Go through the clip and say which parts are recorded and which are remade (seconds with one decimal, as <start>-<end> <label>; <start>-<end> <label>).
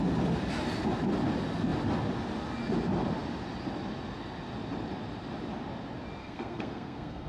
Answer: 0.0-6.2 recorded; 6.2-7.3 remade